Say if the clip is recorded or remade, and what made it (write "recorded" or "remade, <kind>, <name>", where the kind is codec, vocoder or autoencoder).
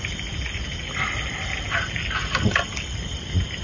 recorded